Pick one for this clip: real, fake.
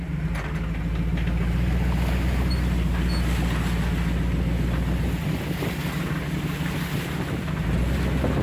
real